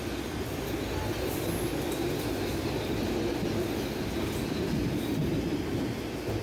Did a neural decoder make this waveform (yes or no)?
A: no